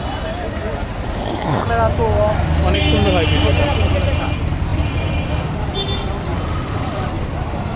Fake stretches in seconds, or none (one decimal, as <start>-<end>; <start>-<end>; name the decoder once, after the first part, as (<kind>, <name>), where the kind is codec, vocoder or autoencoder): 0.6-2.0 (vocoder, BigVGAN v2); 4.7-7.8